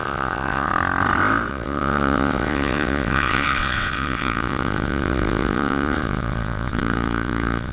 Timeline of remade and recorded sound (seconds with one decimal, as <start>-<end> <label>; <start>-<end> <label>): 0.0-0.7 remade; 0.7-1.5 recorded; 1.5-7.7 remade